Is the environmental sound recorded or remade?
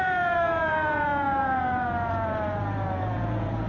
remade